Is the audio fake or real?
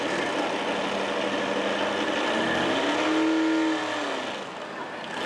real